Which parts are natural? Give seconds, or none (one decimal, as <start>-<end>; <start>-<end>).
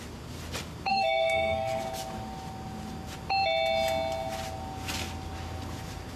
0.0-0.9; 1.8-6.2